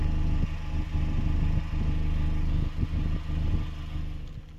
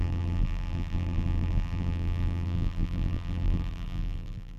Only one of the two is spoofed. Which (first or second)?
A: second